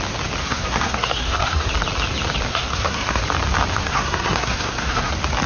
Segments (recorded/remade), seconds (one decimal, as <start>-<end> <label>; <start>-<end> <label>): 0.0-0.4 recorded; 0.4-1.7 remade; 1.7-2.5 recorded; 2.5-3.2 remade; 3.2-3.7 recorded; 3.7-5.1 remade; 5.1-5.5 recorded